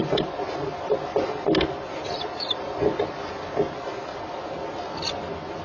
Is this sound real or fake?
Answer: real